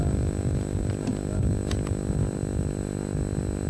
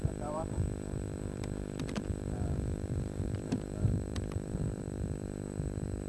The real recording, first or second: first